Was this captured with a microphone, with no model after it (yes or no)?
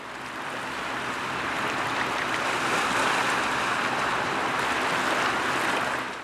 yes